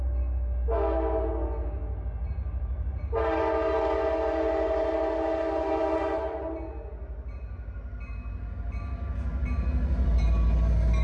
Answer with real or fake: real